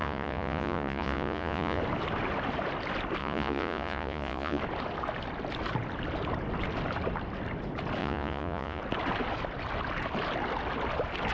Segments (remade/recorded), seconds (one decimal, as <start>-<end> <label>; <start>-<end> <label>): 0.0-1.8 remade; 1.8-3.2 recorded; 3.2-4.6 remade; 4.6-8.0 recorded; 8.0-8.8 remade; 8.8-11.3 recorded